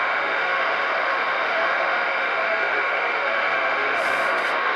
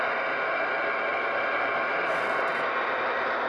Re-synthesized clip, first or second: first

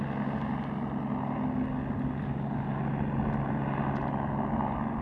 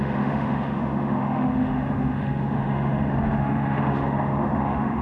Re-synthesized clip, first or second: second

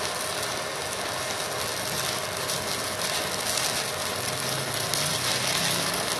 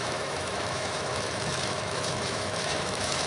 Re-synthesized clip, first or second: second